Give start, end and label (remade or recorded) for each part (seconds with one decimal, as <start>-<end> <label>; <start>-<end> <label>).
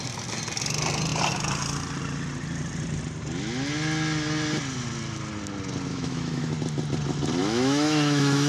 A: 0.0-5.9 recorded; 5.9-6.5 remade; 6.5-7.4 recorded; 7.4-8.5 remade